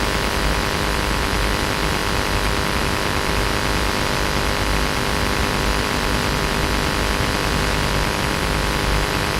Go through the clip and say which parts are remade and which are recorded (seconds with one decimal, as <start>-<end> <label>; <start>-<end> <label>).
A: 0.0-9.4 remade